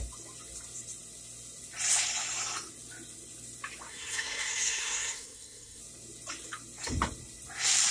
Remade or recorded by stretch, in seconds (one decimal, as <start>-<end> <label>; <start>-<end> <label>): 0.0-3.9 recorded; 3.9-5.8 remade; 5.8-7.9 recorded